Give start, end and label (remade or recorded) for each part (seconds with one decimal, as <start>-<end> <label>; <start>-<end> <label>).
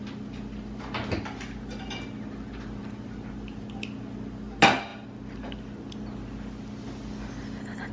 0.0-7.9 recorded